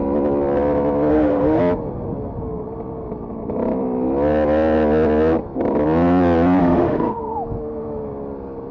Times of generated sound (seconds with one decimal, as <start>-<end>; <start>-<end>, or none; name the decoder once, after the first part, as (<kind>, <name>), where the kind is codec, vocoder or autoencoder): 1.1-1.6 (autoencoder, DAC-VAE); 6.6-7.2